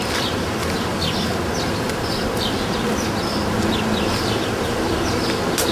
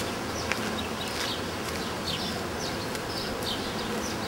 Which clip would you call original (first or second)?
second